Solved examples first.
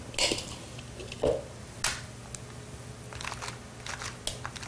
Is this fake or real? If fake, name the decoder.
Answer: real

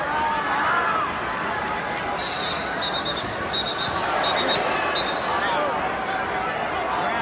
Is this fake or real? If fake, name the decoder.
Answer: real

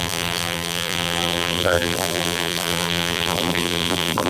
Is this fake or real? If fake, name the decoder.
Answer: fake, vocoder, BigVGAN v2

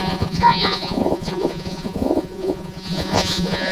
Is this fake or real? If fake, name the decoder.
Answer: fake, vocoder, Vocos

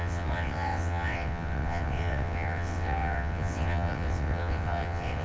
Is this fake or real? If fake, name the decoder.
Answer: fake, vocoder, WaveNeXt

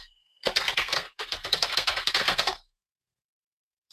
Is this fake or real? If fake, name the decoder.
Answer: fake, codec, SNAC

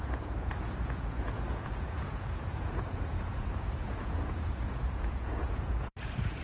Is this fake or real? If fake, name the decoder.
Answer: fake, vocoder, Vocos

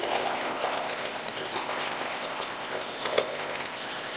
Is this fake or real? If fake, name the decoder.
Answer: fake, codec, ZipCodec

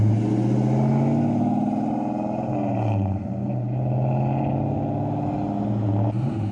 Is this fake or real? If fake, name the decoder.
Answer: real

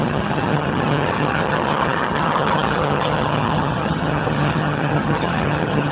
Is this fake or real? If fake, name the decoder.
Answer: fake, vocoder, HiFi-GAN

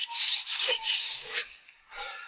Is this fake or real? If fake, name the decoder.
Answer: fake, codec, DAC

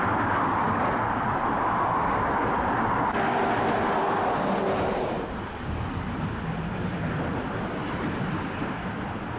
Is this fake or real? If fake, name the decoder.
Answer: fake, vocoder, BigVGAN v2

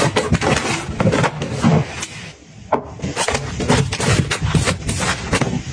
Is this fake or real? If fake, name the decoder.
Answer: real